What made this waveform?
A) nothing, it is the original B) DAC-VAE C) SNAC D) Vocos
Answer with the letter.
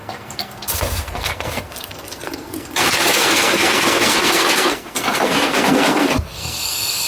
C